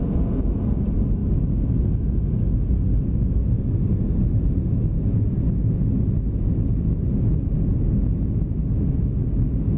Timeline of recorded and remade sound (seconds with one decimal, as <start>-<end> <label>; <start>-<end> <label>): 0.0-9.8 recorded